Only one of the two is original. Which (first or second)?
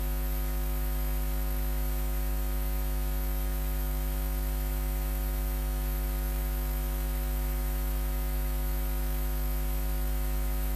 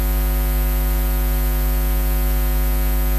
second